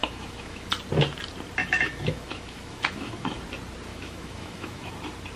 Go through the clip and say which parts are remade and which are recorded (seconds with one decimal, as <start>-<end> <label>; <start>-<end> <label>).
0.0-0.7 remade; 0.7-1.6 recorded; 1.6-3.4 remade; 3.4-3.9 recorded; 3.9-4.9 remade; 4.9-5.4 recorded

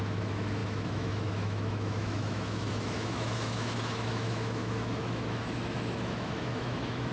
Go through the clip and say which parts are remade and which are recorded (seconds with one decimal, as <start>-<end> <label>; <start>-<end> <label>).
0.0-7.1 remade

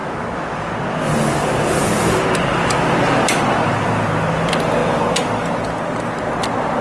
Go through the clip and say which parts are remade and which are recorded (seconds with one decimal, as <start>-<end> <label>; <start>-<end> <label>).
0.0-0.7 remade; 0.7-6.8 recorded